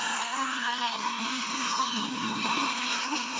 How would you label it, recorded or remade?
remade